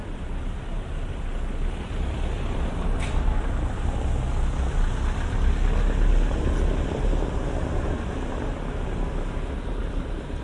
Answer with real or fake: real